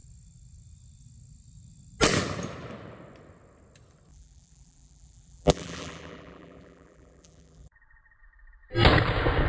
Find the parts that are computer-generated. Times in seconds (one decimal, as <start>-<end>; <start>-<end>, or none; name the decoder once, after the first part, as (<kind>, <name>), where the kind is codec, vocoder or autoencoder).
4.1-8.2 (vocoder, BigVGAN v2)

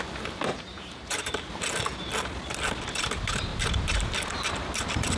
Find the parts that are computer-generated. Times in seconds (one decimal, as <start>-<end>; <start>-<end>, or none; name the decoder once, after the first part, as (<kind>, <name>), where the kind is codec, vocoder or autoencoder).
0.5-1.5 (vocoder, BigVGAN v2); 3.5-4.1

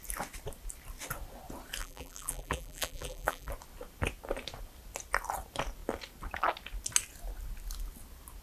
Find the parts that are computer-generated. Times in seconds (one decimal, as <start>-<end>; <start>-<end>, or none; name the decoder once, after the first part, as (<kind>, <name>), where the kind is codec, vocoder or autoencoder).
1.8-3.5 (vocoder, BigVGAN v2)

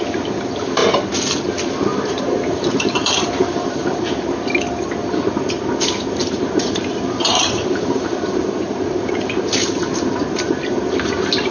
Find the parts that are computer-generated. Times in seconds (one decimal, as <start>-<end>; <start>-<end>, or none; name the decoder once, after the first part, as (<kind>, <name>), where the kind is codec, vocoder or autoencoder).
1.9-4.1 (vocoder, BigVGAN v2); 6.2-9.8

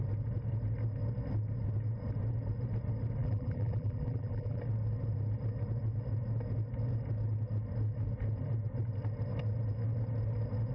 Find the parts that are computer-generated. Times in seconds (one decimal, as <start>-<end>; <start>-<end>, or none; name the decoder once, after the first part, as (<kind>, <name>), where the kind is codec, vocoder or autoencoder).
3.2-4.6 (vocoder, BigVGAN v2)

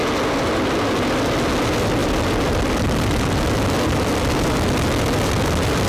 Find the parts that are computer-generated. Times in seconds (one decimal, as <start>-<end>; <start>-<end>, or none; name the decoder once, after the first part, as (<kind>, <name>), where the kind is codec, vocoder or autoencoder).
2.0-4.7 (vocoder, BigVGAN v2)